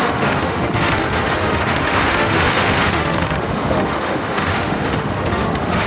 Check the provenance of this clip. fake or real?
fake